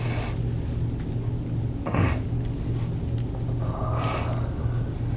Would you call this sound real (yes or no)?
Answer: yes